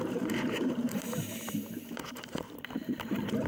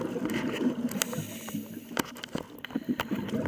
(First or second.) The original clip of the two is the second